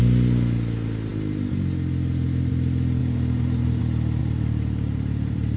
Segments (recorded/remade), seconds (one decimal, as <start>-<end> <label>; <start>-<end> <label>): 0.0-3.0 recorded; 3.0-3.8 remade; 3.8-4.2 recorded; 4.2-5.6 remade